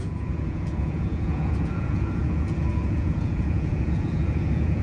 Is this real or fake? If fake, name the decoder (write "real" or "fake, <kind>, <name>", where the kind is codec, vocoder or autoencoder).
fake, vocoder, Vocos